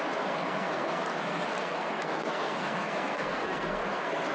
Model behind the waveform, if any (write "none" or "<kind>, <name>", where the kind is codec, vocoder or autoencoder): codec, SNAC